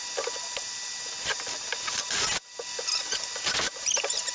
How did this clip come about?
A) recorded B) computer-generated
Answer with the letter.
A